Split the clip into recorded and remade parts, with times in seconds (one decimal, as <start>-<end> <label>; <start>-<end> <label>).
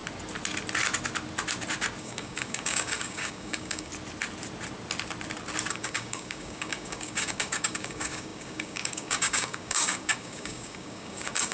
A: 0.0-2.0 recorded; 2.0-3.9 remade; 3.9-5.7 recorded; 5.7-11.5 remade